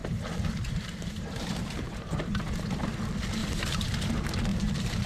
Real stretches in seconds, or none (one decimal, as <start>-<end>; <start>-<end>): 2.9-3.4; 4.1-4.5